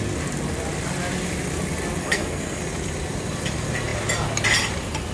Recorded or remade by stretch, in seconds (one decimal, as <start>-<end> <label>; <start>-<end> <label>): 0.0-2.0 recorded; 2.0-2.6 remade; 2.6-5.1 recorded

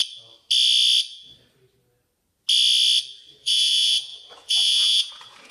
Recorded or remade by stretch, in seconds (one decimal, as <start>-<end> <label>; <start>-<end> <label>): 0.0-3.3 recorded; 3.3-5.5 remade

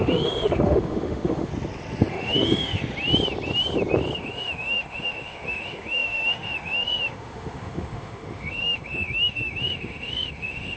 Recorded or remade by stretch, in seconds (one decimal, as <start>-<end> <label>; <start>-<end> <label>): 0.0-1.5 remade; 1.5-2.1 recorded; 2.1-2.8 remade; 2.8-4.2 recorded; 4.2-10.8 remade

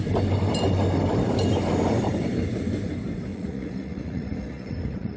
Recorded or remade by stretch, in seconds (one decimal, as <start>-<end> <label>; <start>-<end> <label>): 0.0-3.3 recorded; 3.3-5.2 remade

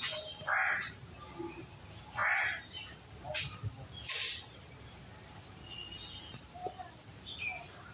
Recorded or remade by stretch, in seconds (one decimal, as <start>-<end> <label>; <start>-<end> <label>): 0.0-7.9 recorded

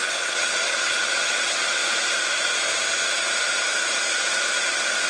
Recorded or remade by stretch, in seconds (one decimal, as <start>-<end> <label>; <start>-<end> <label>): 0.0-1.8 remade; 1.8-5.1 recorded

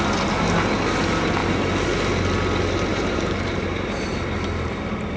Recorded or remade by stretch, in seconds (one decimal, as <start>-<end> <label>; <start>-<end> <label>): 0.0-1.4 recorded; 1.4-2.1 remade; 2.1-2.9 recorded; 2.9-4.8 remade; 4.8-5.2 recorded

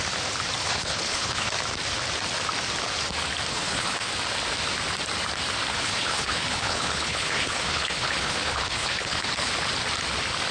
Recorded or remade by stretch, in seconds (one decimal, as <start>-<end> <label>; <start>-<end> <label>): 0.0-0.6 recorded; 0.6-1.5 remade; 1.5-3.5 recorded; 3.5-4.1 remade; 4.1-5.7 recorded; 5.7-9.5 remade; 9.5-10.5 recorded